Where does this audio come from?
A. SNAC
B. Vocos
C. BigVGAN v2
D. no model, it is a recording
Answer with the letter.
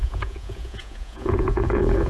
B